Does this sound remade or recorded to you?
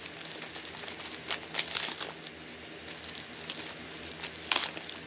recorded